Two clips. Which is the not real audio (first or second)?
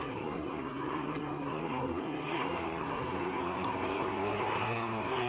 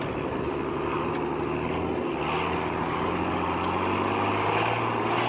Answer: first